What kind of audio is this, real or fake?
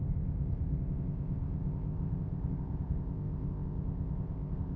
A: fake